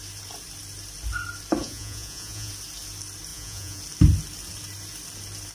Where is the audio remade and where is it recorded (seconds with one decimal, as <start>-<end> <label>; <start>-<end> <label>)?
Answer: 0.0-1.6 recorded; 1.6-2.5 remade; 2.5-3.3 recorded; 3.3-3.8 remade; 3.8-5.5 recorded